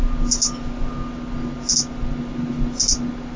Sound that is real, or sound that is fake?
real